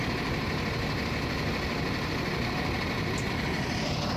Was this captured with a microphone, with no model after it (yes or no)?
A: yes